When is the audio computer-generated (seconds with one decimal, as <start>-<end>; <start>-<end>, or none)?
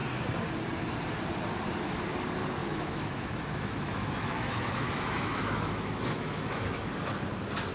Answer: 2.6-6.9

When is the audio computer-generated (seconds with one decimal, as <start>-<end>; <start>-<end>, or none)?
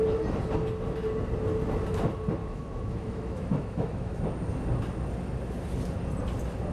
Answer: 2.4-4.2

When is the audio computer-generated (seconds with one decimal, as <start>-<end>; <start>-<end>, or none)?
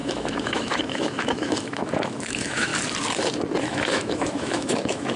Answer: 0.0-2.7; 3.6-5.2